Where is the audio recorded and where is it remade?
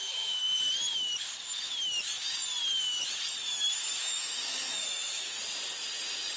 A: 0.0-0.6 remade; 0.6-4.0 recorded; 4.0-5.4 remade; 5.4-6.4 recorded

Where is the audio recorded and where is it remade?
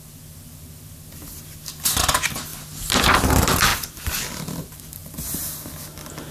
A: 0.0-6.3 recorded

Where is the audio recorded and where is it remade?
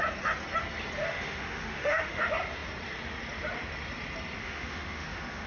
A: 0.0-1.0 recorded; 1.0-2.2 remade; 2.2-4.4 recorded; 4.4-5.5 remade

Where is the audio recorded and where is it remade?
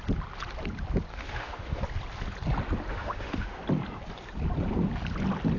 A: 0.0-1.1 recorded; 1.1-1.8 remade; 1.8-2.9 recorded; 2.9-3.6 remade; 3.6-5.6 recorded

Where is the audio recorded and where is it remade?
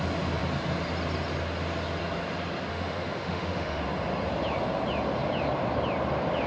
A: 0.0-2.7 recorded; 2.7-3.8 remade; 3.8-6.5 recorded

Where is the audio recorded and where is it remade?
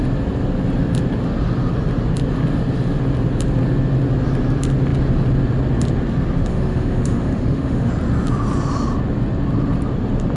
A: 0.0-6.5 recorded; 6.5-7.9 remade; 7.9-10.4 recorded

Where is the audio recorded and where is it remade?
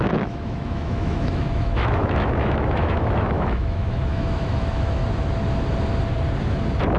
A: 0.0-5.0 remade; 5.0-7.0 recorded